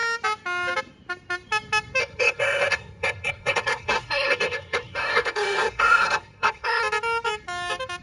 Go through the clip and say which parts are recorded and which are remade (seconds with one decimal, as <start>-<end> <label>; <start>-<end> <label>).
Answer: 0.0-2.0 recorded; 2.0-6.8 remade; 6.8-8.0 recorded